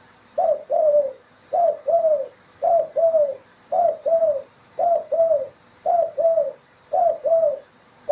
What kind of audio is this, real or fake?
fake